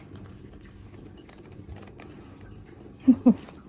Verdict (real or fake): real